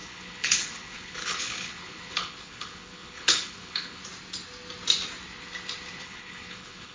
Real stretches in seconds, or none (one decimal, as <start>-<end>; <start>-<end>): 4.0-6.0